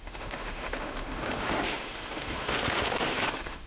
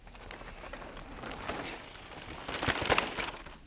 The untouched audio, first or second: second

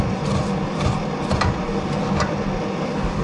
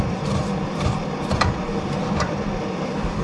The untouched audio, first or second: first